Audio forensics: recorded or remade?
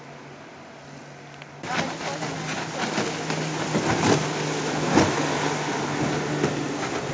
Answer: recorded